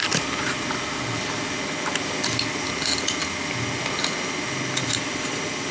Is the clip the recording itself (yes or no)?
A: yes